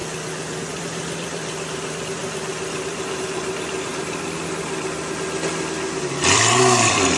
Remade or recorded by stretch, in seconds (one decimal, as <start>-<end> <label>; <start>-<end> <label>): 0.0-0.6 recorded; 0.6-3.9 remade; 3.9-6.0 recorded; 6.0-7.2 remade